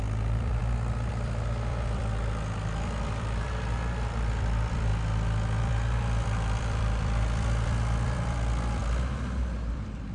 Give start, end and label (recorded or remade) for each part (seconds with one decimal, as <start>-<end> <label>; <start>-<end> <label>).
0.0-0.6 remade; 0.6-1.1 recorded; 1.1-4.9 remade; 4.9-5.6 recorded; 5.6-8.8 remade; 8.8-9.7 recorded; 9.7-10.1 remade